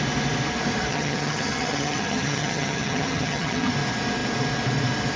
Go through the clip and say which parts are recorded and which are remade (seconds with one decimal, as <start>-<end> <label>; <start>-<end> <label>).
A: 0.0-0.9 recorded; 0.9-3.7 remade; 3.7-5.2 recorded